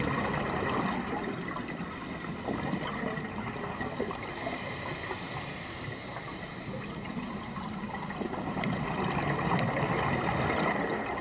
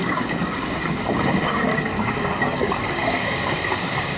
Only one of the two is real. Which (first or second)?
first